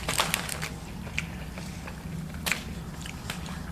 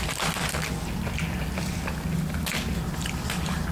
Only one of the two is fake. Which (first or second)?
first